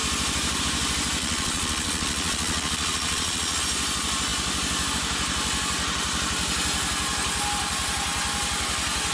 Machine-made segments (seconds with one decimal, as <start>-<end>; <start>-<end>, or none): 1.2-3.6

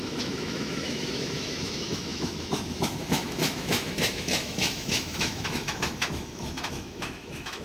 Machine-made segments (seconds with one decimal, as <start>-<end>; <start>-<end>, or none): 0.0-7.6

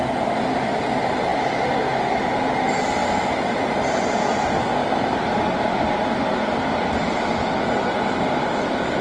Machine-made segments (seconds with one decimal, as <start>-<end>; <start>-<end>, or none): 4.8-7.3

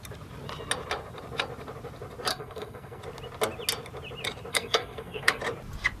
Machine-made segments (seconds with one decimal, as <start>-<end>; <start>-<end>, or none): 2.3-3.0; 4.5-5.4

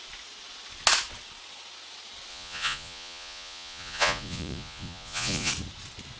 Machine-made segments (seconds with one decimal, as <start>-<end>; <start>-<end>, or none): 2.3-5.5